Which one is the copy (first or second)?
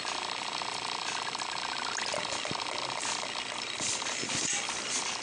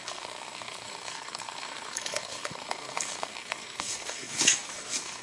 second